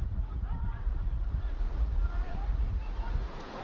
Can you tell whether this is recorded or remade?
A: remade